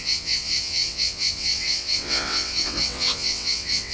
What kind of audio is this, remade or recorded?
remade